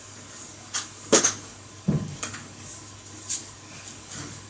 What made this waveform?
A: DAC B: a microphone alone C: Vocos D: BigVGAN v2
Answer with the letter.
A